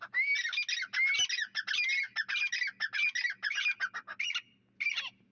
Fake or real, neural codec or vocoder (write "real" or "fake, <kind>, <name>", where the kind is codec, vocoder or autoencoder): real